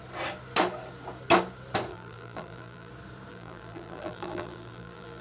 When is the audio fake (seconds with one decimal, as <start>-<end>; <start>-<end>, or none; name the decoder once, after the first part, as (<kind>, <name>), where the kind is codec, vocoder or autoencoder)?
1.9-2.9 (vocoder, BigVGAN v2); 3.3-5.2